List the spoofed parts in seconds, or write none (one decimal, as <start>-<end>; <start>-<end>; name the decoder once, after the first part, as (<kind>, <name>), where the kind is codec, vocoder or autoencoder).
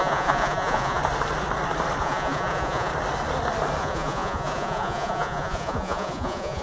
0.0-1.0 (vocoder, Vocos); 2.0-2.9; 3.8-6.6